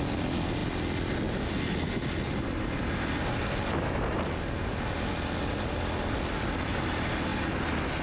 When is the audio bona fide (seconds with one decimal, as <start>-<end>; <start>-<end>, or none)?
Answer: 0.0-8.0